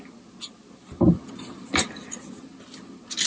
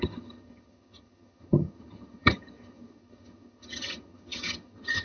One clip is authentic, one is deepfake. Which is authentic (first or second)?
first